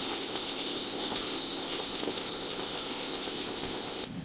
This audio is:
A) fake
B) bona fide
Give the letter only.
A